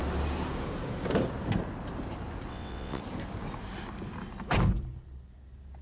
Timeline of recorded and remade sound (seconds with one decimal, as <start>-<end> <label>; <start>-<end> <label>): 0.0-2.5 recorded; 2.5-3.0 remade; 3.0-5.8 recorded